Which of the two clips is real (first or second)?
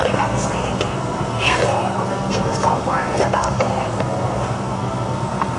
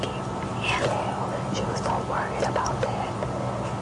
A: second